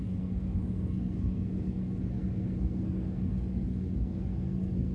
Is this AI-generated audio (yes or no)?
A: yes